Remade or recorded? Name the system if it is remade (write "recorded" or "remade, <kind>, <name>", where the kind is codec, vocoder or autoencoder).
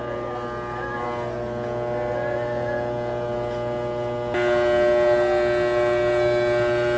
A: recorded